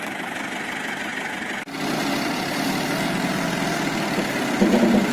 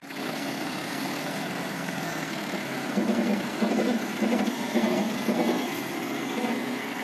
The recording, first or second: first